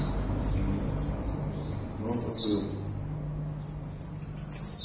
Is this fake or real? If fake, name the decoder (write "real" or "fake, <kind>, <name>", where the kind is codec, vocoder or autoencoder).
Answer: real